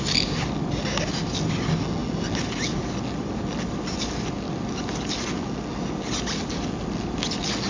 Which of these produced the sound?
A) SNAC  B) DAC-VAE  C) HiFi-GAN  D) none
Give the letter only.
D